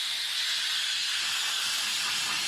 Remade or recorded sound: recorded